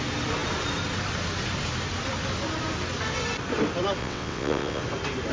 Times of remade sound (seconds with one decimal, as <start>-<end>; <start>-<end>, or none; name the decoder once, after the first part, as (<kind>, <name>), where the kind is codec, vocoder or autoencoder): 4.0-4.8 (vocoder, WaveNeXt)